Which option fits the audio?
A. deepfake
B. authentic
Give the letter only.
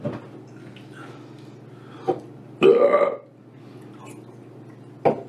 B